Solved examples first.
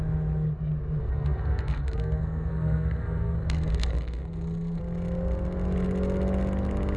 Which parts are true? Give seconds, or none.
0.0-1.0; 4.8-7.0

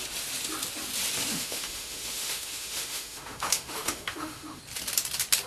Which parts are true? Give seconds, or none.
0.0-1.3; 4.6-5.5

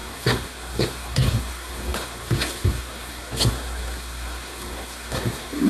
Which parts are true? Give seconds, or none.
none

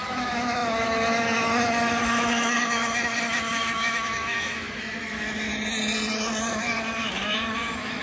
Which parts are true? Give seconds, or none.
5.5-6.5

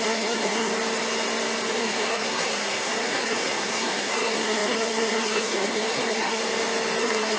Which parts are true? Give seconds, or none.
0.7-1.7; 6.4-7.0

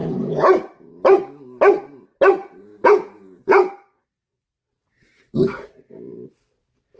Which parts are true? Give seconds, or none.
0.9-2.4; 3.7-7.0

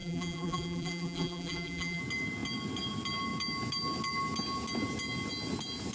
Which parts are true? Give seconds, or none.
2.0-5.9

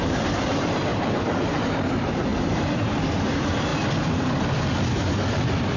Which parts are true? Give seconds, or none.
3.7-5.8